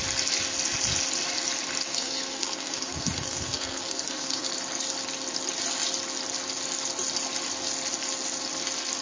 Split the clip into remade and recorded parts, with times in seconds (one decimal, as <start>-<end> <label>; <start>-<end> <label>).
0.0-1.9 recorded; 1.9-4.5 remade; 4.5-9.0 recorded